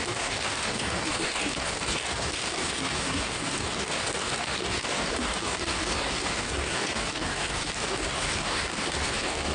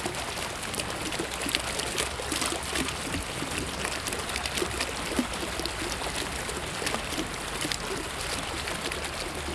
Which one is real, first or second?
second